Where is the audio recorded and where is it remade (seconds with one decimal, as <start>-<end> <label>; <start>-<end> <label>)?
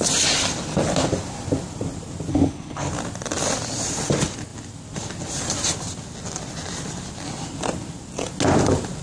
0.0-2.3 recorded; 2.3-2.9 remade; 2.9-9.0 recorded